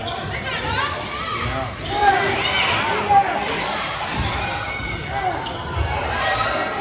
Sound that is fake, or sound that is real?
real